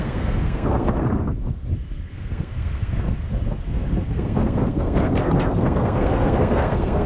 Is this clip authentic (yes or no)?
no